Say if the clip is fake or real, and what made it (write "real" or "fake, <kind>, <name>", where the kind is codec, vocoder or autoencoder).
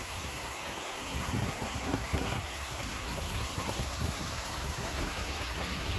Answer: fake, codec, SNAC